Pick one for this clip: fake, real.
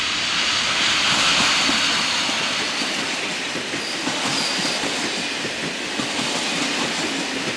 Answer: real